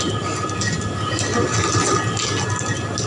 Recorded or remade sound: recorded